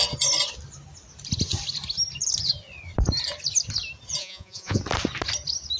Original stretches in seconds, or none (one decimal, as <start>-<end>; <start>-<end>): 0.0-4.2; 4.8-5.8